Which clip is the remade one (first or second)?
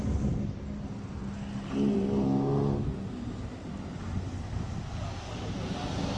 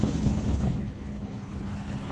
second